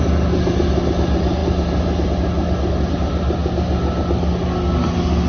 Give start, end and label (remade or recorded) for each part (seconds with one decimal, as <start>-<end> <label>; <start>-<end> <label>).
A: 0.0-5.3 recorded